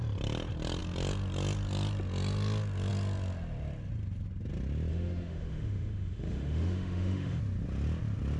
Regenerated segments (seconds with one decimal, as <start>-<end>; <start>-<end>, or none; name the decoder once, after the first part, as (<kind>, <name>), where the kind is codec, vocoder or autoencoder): 4.9-7.4 (autoencoder, DAC-VAE)